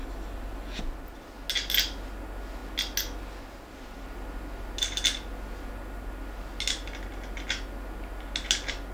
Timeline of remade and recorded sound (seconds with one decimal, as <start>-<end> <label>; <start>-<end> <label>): 0.0-8.9 recorded